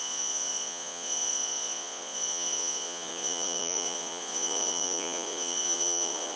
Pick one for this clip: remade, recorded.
remade